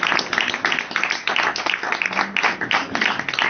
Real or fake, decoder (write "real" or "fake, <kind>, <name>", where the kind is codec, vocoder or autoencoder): real